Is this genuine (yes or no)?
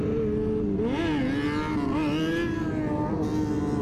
yes